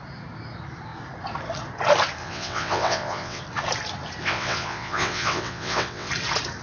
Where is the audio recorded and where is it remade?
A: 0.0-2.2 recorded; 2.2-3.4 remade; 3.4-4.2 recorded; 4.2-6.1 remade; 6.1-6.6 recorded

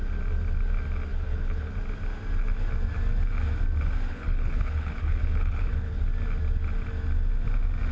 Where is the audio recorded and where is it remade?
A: 0.0-1.1 recorded; 1.1-1.7 remade; 1.7-4.1 recorded; 4.1-6.0 remade; 6.0-7.9 recorded

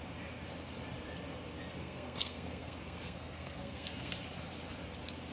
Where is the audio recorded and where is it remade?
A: 0.0-1.8 recorded; 1.8-4.1 remade; 4.1-5.3 recorded

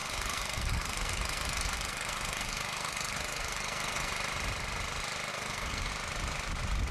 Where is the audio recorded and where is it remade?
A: 0.0-4.1 remade; 4.1-5.3 recorded; 5.3-5.9 remade; 5.9-6.9 recorded

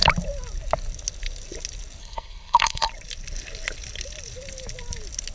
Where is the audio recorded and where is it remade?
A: 0.0-2.0 recorded; 2.0-2.9 remade; 2.9-5.3 recorded

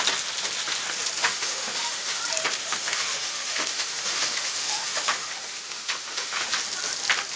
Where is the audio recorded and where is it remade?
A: 0.0-1.2 recorded; 1.2-2.2 remade; 2.2-2.6 recorded; 2.6-6.5 remade; 6.5-7.4 recorded

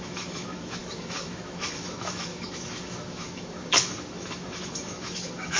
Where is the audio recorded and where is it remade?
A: 0.0-5.6 remade

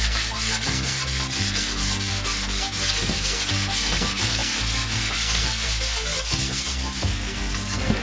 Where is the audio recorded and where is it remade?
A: 0.0-8.0 remade